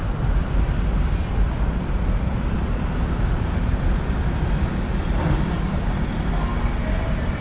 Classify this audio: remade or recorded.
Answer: recorded